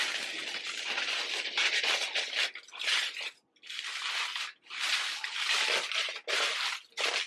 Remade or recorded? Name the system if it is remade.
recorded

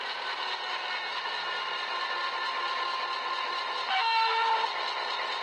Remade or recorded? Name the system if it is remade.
recorded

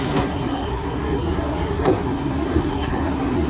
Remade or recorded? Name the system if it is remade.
remade, codec, SNAC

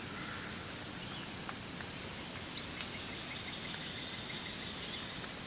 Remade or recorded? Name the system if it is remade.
recorded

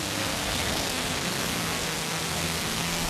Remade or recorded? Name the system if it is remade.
remade, codec, SNAC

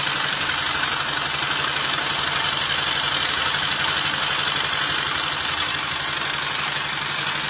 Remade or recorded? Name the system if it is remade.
recorded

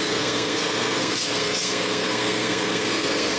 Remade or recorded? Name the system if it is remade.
remade, codec, SNAC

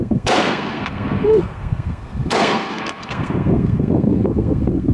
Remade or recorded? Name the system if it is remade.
remade, codec, SNAC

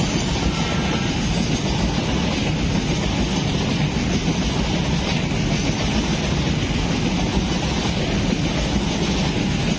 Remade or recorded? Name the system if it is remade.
recorded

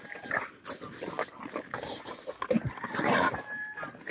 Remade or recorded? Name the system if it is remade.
recorded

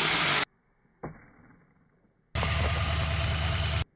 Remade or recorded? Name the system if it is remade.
recorded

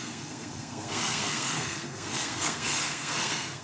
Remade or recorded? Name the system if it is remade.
remade, codec, SNAC